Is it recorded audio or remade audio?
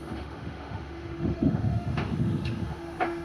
remade